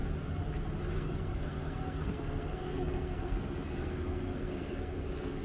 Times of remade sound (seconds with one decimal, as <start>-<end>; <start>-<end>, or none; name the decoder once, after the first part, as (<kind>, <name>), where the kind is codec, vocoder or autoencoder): 0.9-5.4 (codec, SNAC)